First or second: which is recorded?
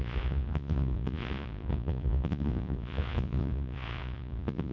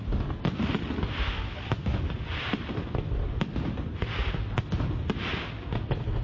second